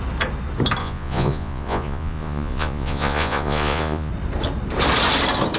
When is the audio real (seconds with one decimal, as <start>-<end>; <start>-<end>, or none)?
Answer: 0.0-0.8; 4.1-5.6

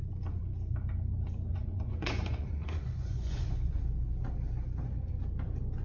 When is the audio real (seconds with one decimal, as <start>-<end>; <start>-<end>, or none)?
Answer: 0.0-1.5; 3.8-5.8

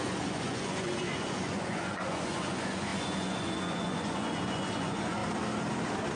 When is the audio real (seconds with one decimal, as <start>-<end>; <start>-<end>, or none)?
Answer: 5.2-6.2

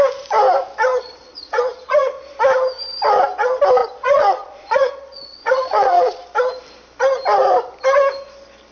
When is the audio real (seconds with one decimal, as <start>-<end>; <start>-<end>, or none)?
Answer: 0.0-0.9; 2.3-3.8; 6.2-8.7

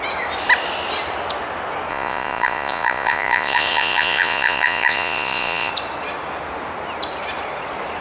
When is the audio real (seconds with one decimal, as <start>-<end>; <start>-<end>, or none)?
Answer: 0.0-1.9; 5.7-8.0

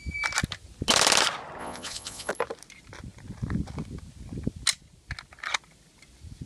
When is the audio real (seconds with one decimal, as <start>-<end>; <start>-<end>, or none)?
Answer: 0.0-1.6; 2.3-6.5

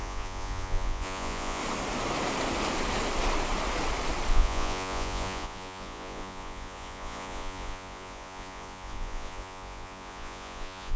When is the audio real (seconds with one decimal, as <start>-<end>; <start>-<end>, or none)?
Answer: 1.6-4.3